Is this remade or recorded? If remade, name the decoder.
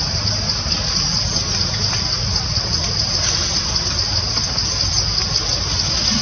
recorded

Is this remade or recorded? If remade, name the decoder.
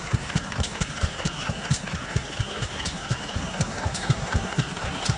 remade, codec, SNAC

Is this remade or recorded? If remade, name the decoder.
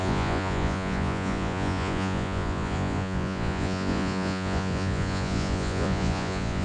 remade, vocoder, Vocos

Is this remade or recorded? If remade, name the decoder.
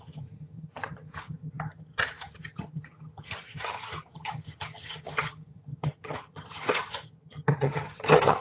remade, vocoder, HiFi-GAN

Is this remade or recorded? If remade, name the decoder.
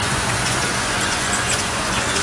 remade, vocoder, Vocos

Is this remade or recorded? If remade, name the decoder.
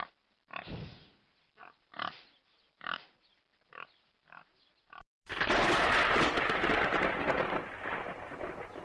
remade, vocoder, BigVGAN v2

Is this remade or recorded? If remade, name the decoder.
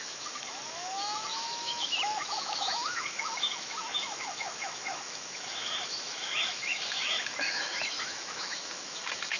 remade, autoencoder, DAC-VAE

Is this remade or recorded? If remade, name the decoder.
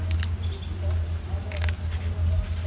recorded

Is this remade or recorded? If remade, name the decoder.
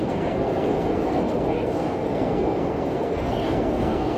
remade, codec, SNAC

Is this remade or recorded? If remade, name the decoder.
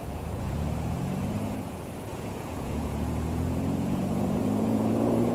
remade, vocoder, Vocos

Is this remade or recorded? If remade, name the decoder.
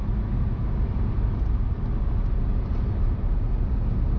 recorded